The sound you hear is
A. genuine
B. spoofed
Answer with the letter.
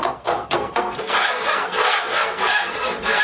B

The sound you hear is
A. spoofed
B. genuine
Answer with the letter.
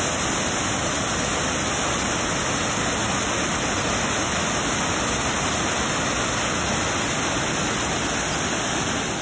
B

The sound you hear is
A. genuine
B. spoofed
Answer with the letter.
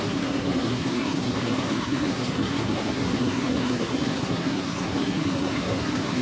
B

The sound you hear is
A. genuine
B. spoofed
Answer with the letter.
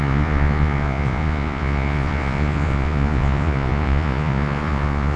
B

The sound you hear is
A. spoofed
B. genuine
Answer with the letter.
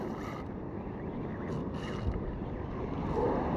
B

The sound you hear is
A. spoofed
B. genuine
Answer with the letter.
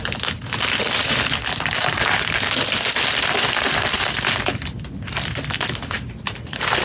B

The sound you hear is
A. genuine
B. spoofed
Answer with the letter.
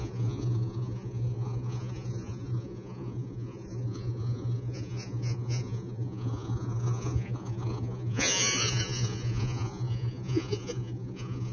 B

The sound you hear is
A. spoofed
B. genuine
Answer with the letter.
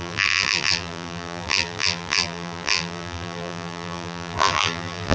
A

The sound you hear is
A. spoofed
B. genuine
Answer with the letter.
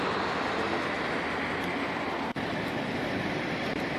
B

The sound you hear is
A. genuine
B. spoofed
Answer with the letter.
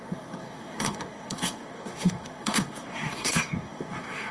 B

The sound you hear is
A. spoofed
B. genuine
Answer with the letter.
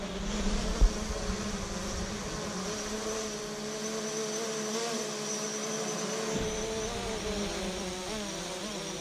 B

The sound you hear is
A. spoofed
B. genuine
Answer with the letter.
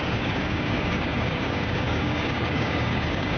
A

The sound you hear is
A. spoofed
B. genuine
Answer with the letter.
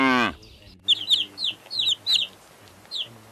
B